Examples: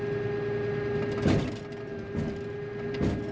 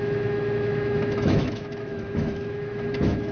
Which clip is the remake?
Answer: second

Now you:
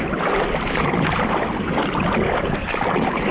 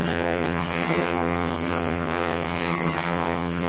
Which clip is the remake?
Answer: second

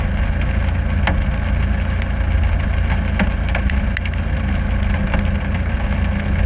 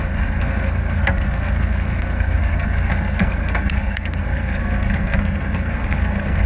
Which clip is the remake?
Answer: second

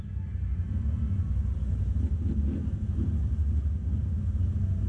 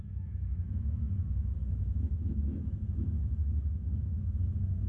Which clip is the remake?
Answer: second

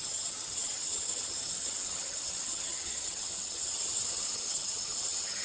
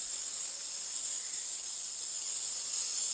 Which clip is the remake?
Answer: first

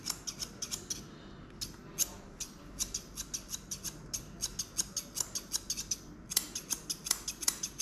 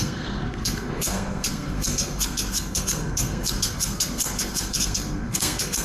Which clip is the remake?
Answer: second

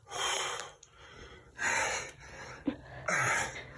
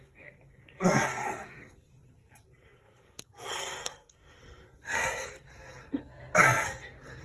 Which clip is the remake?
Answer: second